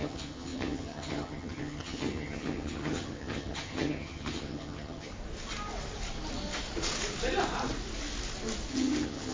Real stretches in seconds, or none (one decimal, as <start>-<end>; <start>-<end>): 5.1-8.7